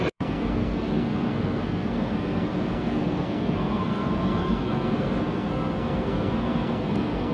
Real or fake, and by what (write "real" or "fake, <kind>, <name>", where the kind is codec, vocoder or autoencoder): fake, codec, SNAC